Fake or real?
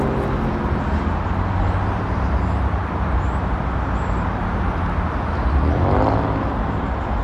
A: real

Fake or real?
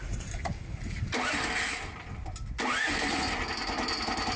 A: real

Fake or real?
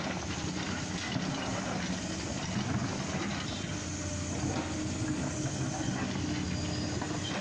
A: real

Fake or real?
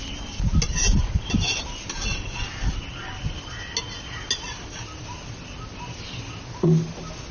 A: real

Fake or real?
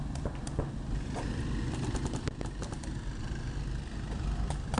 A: real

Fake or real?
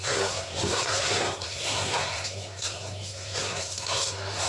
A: fake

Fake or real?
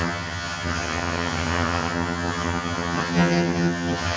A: fake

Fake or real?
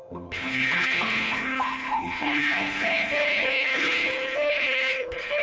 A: fake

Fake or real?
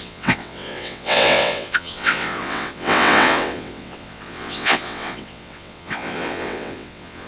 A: fake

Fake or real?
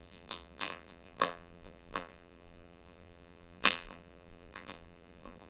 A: fake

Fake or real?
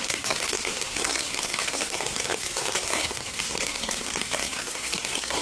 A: fake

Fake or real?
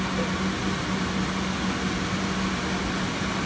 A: real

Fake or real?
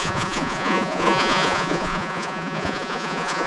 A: fake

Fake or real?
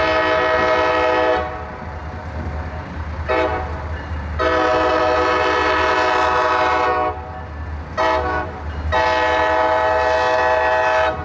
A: real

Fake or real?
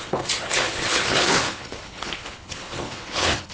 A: fake